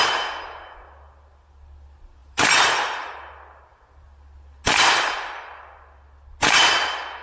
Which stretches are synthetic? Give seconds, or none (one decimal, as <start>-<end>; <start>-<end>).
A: 2.2-3.1